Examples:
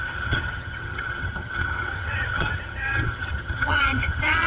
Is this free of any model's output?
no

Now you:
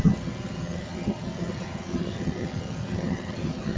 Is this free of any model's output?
no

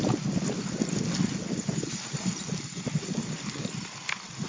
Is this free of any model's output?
yes